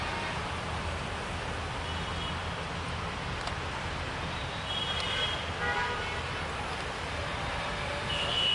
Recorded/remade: recorded